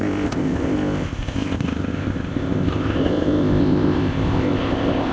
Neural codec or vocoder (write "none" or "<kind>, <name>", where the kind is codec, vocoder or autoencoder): codec, ZipCodec